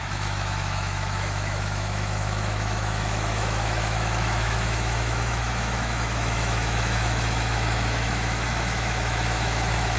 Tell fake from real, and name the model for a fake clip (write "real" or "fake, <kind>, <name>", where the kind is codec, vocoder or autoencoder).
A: fake, autoencoder, DAC-VAE